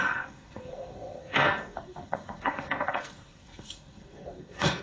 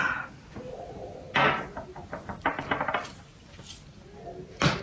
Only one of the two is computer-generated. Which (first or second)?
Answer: first